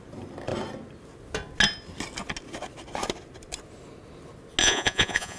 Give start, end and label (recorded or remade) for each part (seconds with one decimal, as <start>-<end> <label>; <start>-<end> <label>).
0.0-4.6 recorded; 4.6-5.4 remade